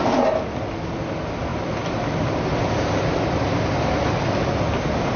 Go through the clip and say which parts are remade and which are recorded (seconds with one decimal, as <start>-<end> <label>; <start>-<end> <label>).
0.0-5.2 recorded